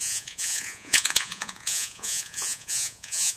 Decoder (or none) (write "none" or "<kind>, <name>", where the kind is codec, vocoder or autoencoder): vocoder, Vocos